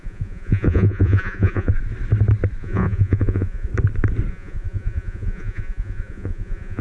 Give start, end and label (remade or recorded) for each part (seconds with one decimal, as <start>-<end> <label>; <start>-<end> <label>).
0.0-1.7 remade; 1.7-2.6 recorded; 2.6-3.7 remade; 3.7-4.3 recorded; 4.3-6.8 remade